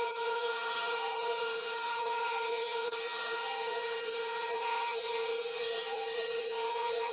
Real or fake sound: fake